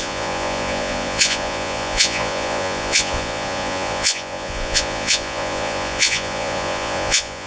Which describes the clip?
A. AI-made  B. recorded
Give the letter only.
A